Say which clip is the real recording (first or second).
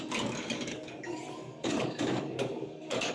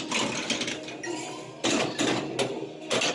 second